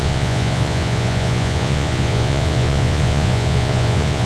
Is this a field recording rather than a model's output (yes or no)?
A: no